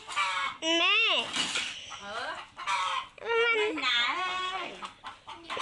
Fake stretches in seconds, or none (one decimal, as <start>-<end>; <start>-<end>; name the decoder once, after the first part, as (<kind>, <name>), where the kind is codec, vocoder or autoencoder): 4.3-4.9 (codec, SNAC)